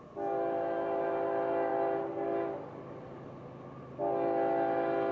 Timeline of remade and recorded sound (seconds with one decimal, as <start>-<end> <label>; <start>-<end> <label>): 0.0-5.1 recorded